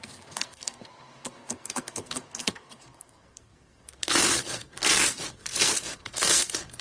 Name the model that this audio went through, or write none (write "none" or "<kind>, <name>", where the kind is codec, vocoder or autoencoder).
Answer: codec, SNAC